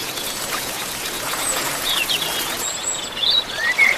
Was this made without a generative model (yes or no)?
no